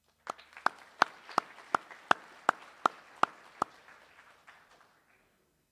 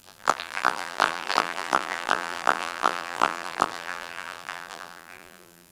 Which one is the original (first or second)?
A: first